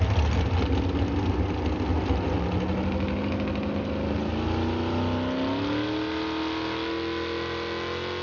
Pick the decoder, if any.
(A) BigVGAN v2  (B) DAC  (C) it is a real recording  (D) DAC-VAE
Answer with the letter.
C